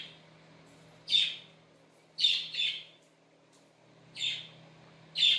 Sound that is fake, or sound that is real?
real